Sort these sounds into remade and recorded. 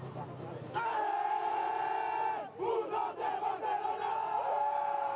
recorded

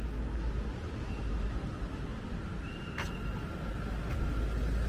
recorded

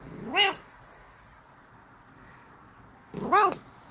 recorded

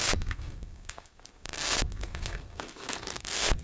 remade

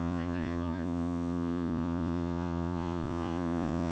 remade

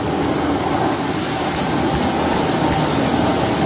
recorded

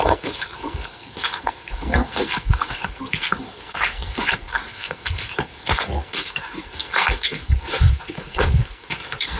remade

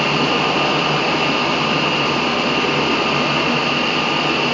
recorded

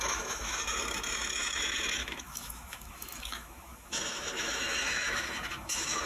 remade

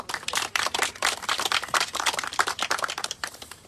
remade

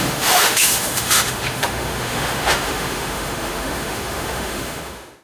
remade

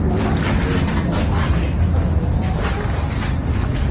recorded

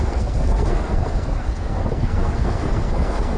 remade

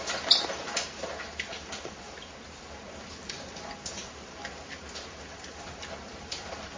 recorded